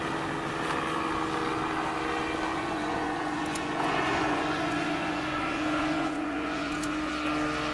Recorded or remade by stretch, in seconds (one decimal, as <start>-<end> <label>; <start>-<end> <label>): 0.0-2.5 recorded; 2.5-7.1 remade; 7.1-7.7 recorded